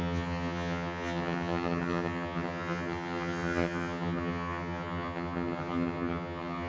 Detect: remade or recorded remade